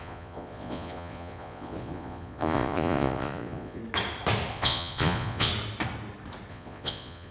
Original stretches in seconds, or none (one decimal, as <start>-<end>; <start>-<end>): 3.8-4.5; 5.5-6.5